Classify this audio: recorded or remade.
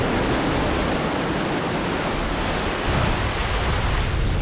recorded